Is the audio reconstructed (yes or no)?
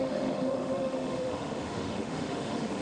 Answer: yes